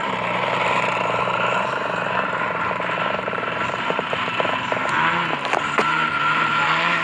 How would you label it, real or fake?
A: fake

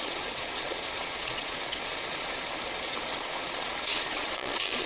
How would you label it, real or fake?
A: fake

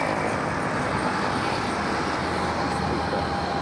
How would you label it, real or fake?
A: real